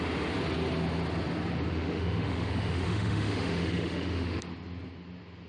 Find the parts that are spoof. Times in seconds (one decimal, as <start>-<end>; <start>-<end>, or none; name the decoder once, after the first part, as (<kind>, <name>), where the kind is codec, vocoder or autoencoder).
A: 1.7-4.4 (autoencoder, DAC-VAE)